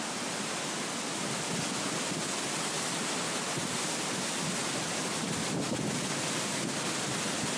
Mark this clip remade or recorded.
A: recorded